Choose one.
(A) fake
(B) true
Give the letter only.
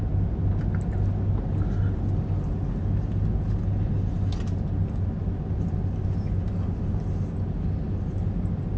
B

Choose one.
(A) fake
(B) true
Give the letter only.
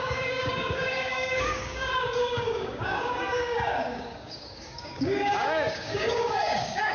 A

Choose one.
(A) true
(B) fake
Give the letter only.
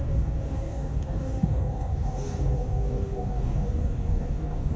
B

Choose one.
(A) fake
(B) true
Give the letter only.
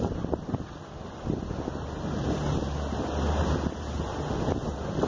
B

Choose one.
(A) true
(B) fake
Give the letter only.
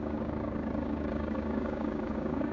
B